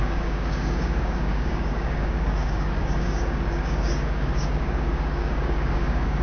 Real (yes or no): no